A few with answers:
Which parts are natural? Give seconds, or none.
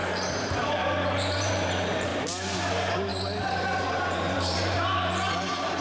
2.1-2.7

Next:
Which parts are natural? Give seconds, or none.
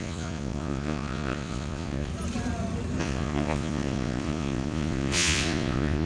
2.1-3.0